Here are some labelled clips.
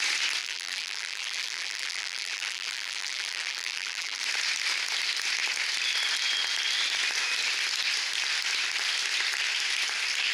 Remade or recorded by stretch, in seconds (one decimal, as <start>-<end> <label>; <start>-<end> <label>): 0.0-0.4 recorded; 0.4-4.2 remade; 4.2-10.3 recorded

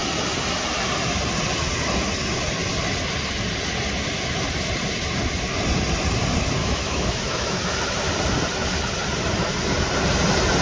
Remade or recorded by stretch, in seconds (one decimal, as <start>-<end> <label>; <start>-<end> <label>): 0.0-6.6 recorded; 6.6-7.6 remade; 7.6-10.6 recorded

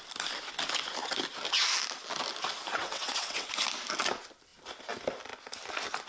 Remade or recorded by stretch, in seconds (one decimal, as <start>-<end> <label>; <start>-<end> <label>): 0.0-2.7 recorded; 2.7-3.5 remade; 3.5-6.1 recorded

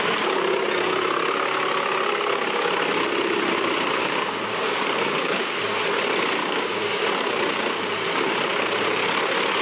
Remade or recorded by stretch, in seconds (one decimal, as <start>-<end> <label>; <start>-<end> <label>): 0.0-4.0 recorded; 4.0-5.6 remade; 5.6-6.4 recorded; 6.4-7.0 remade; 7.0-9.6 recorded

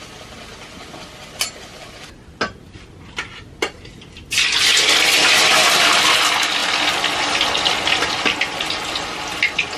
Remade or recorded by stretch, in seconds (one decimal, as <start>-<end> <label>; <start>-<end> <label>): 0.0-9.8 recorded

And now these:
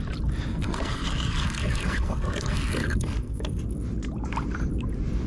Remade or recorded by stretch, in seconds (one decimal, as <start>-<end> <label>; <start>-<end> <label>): 0.0-0.5 recorded; 0.5-3.6 remade; 3.6-5.3 recorded